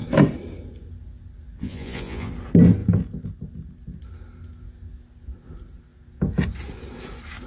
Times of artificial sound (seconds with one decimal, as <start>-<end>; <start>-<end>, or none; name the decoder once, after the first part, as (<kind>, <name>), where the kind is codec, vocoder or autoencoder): 1.6-2.3 (vocoder, Vocos)